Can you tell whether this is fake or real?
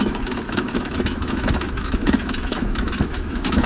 fake